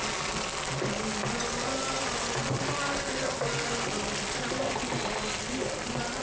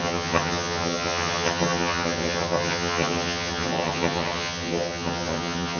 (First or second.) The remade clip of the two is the second